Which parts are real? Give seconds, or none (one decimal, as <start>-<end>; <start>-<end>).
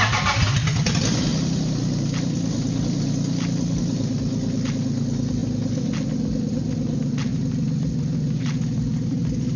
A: 0.0-9.6